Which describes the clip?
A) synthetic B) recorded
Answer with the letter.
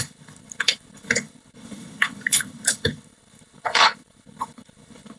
A